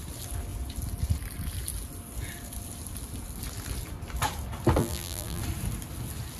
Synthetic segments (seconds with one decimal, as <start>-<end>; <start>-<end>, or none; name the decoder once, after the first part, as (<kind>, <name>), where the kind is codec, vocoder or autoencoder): 4.8-5.4 (vocoder, BigVGAN v2)